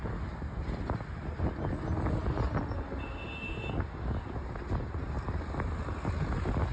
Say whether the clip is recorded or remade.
recorded